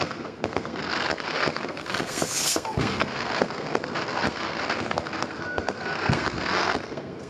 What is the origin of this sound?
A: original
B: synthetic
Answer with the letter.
B